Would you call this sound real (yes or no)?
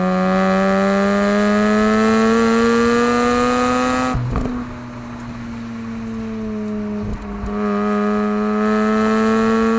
yes